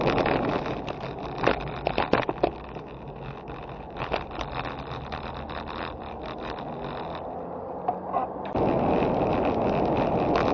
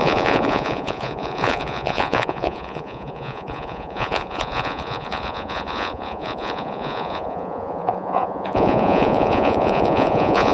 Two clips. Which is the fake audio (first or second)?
second